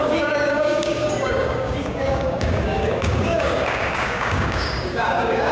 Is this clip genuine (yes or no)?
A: no